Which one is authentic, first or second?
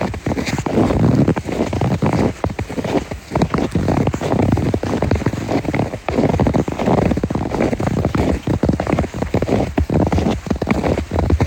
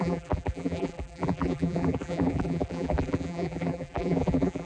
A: first